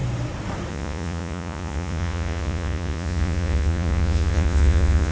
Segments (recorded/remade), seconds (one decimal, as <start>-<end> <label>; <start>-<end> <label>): 0.0-0.7 recorded; 0.7-5.1 remade